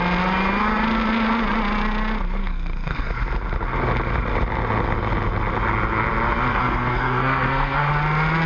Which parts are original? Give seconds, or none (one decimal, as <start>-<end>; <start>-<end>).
0.0-2.4; 3.1-6.5; 7.9-8.5